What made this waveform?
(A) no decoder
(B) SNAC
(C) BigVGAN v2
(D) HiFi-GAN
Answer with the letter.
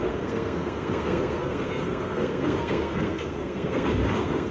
B